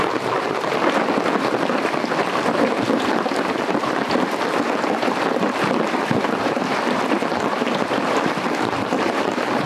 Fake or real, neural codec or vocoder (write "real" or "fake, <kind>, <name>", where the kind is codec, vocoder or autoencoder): real